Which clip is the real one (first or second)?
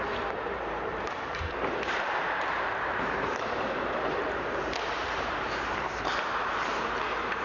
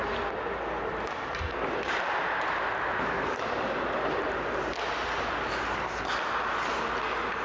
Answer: second